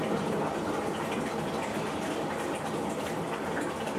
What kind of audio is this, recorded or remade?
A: remade